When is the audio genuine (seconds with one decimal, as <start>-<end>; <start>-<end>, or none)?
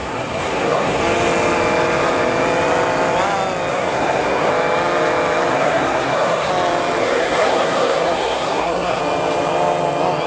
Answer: 1.0-3.7; 4.5-5.5; 6.5-7.0; 9.0-10.3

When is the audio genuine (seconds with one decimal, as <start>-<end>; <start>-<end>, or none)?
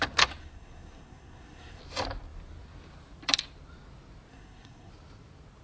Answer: 0.0-0.4; 1.8-4.3; 4.9-5.6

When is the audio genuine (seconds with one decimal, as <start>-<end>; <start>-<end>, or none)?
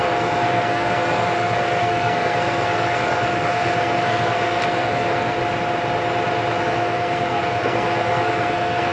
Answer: 5.4-6.6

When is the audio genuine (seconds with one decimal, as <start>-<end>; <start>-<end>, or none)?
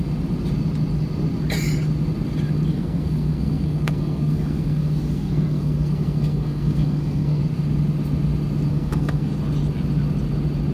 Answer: 0.0-2.7; 7.4-8.7; 9.3-10.7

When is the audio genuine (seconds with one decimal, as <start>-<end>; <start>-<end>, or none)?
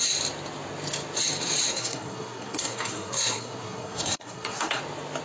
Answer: 0.0-1.7; 4.8-5.2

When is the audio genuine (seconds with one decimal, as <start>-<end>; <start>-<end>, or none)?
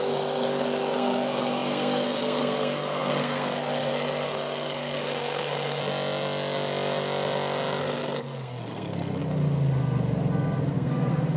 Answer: 5.8-7.8; 9.2-10.7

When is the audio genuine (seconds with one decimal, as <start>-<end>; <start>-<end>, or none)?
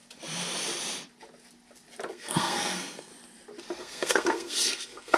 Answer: 0.0-2.1; 3.1-3.8